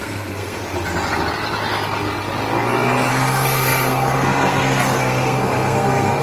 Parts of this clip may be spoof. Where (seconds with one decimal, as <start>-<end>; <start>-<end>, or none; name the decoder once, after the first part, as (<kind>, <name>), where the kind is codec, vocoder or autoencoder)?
0.0-0.6 (codec, SNAC); 3.1-6.2